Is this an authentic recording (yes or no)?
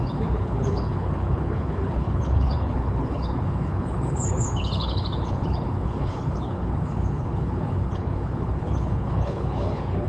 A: no